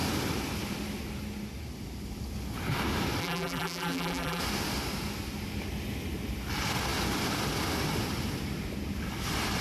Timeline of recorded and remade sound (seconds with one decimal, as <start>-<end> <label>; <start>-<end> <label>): 0.0-3.2 recorded; 3.2-4.4 remade; 4.4-9.6 recorded